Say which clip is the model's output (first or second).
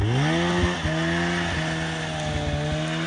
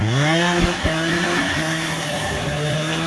second